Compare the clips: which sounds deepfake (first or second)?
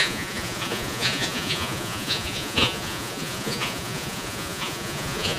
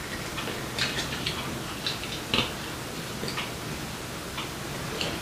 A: first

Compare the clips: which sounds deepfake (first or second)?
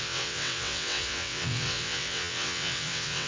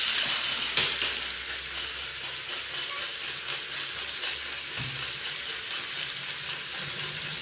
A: first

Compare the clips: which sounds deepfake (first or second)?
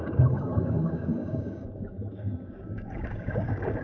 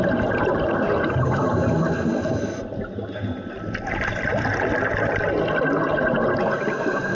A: first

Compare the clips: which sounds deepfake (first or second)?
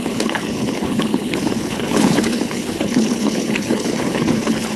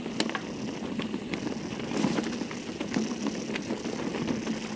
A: first